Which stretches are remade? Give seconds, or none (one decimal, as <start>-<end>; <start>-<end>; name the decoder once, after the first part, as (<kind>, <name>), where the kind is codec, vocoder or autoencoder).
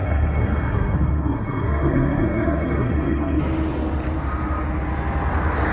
0.0-3.4 (codec, SNAC)